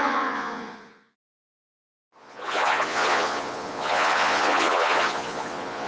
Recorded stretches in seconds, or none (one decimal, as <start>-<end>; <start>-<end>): none